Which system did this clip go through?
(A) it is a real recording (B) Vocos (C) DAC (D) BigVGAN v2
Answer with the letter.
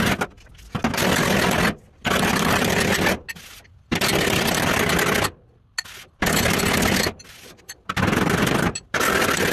A